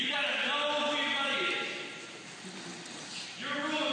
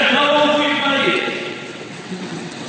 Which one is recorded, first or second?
first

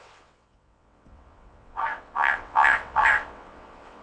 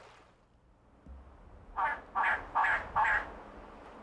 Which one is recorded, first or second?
second